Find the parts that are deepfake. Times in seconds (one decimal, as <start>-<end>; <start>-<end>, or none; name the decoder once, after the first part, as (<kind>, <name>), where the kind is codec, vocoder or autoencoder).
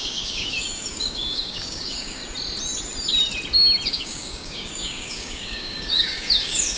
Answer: 0.0-2.2 (codec, DAC); 3.9-6.8